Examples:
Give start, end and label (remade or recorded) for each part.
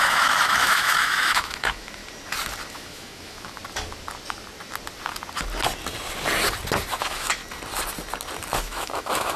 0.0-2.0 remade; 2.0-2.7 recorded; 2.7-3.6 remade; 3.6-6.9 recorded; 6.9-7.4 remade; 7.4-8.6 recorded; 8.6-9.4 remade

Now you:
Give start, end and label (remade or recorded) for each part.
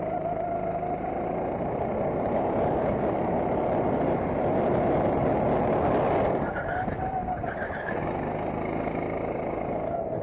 0.0-10.2 recorded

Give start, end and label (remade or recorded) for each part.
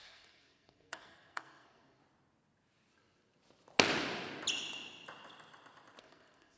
0.0-2.0 remade; 2.0-6.0 recorded; 6.0-6.6 remade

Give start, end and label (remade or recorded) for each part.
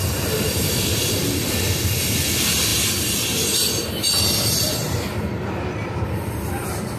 0.0-2.7 remade; 2.7-4.7 recorded; 4.7-7.0 remade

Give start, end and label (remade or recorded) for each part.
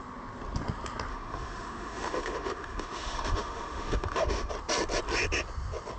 0.0-1.1 recorded; 1.1-4.5 remade; 4.5-6.0 recorded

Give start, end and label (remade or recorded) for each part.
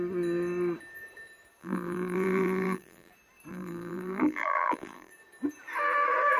0.0-1.6 recorded; 1.6-3.1 remade; 3.1-3.5 recorded; 3.5-5.1 remade; 5.1-6.4 recorded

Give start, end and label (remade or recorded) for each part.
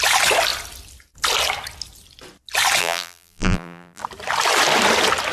0.0-2.8 recorded; 2.8-4.0 remade; 4.0-5.3 recorded